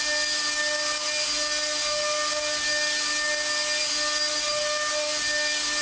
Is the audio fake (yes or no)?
no